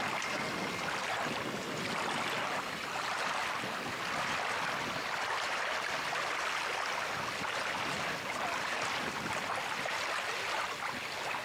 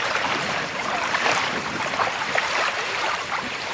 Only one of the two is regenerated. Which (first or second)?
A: second